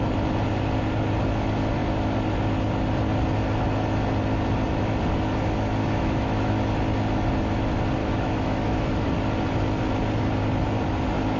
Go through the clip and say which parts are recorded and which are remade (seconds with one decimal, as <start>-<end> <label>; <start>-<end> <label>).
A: 0.0-5.8 recorded; 5.8-6.5 remade; 6.5-8.0 recorded; 8.0-8.9 remade; 8.9-11.4 recorded